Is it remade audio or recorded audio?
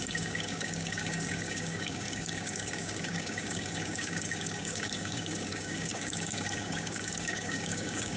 remade